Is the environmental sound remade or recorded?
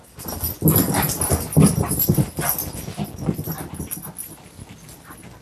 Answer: recorded